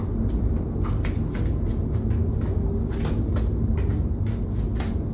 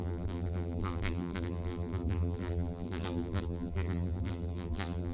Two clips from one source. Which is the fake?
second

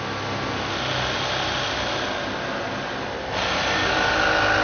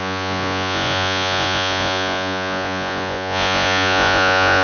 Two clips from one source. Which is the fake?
second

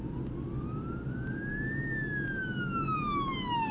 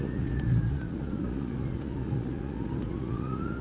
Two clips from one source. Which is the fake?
second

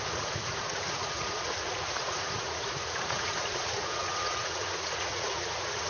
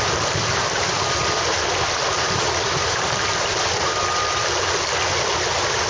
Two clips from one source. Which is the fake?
first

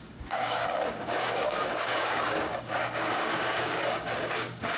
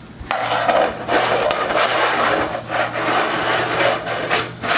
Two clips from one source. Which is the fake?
first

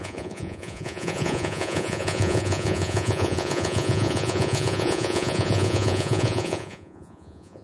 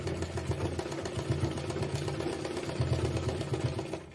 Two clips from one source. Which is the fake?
first